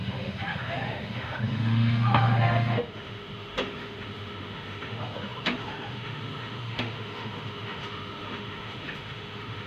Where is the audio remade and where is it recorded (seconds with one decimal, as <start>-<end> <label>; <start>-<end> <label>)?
0.0-9.7 remade